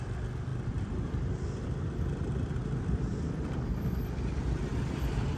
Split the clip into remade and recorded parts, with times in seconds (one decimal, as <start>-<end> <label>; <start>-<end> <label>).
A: 0.0-0.5 recorded; 0.5-3.3 remade; 3.3-5.4 recorded